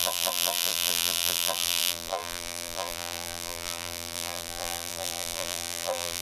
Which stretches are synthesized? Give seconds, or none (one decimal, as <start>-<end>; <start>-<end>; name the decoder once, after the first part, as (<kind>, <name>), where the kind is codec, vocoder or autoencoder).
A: 0.0-6.2 (vocoder, BigVGAN v2)